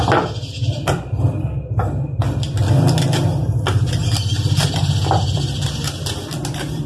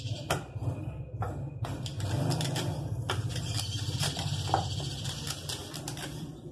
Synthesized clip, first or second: second